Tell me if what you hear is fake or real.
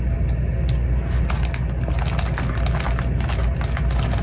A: real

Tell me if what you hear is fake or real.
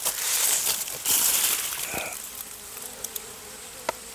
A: real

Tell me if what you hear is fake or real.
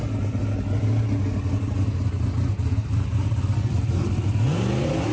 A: real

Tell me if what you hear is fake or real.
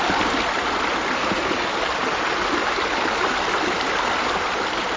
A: real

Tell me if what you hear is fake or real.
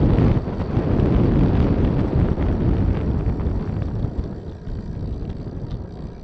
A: real